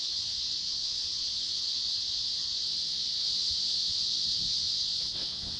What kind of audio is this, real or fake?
fake